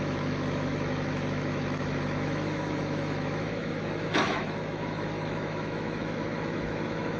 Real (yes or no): no